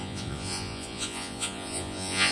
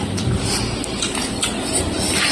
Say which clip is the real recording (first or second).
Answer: second